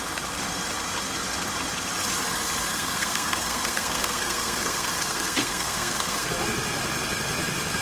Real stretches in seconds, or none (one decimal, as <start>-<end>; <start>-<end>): 0.0-2.7; 6.3-7.8